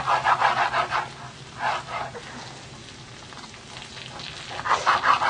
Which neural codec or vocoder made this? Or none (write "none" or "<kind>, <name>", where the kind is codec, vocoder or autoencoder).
none